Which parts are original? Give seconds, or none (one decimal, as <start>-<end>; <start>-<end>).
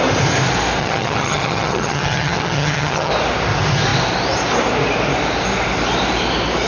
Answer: 0.0-0.8; 3.1-6.7